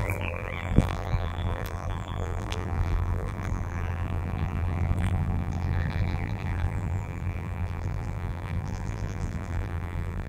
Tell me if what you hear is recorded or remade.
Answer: remade